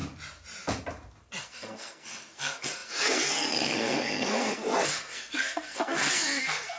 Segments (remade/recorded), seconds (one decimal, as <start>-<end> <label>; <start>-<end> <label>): 0.0-1.4 recorded; 1.4-6.8 remade